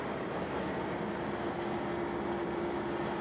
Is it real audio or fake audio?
real